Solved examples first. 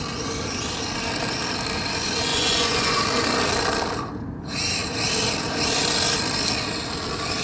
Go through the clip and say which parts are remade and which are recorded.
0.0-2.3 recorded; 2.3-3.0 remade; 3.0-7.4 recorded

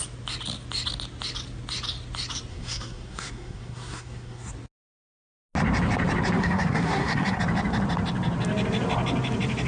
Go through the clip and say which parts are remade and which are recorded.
0.0-2.5 recorded; 2.5-4.5 remade; 4.5-6.4 recorded; 6.4-7.4 remade; 7.4-9.7 recorded